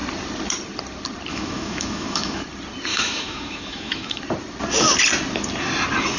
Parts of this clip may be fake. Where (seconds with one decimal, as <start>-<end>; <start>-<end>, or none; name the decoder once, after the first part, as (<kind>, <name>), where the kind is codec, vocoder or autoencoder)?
1.3-2.4 (autoencoder, DAC-VAE); 2.9-4.2